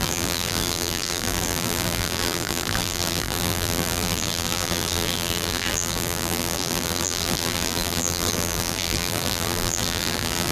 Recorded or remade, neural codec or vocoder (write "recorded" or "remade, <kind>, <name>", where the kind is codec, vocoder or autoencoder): remade, vocoder, BigVGAN v2